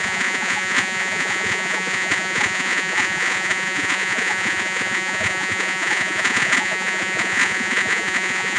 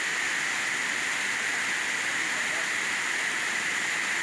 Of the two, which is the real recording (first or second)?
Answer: second